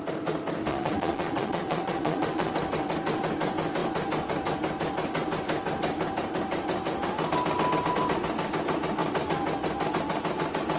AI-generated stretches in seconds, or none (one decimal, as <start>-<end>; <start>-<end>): 0.7-2.5